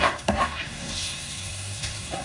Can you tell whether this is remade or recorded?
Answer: remade